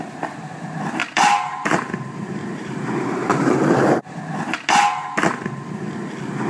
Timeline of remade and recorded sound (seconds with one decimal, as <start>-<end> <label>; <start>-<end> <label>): 0.0-1.0 recorded; 1.0-4.1 remade; 4.1-6.5 recorded